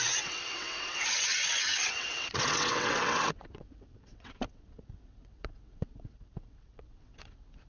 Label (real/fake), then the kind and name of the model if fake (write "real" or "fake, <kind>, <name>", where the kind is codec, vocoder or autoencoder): fake, vocoder, WaveNeXt